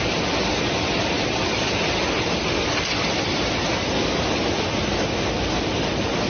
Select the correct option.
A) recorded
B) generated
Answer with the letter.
A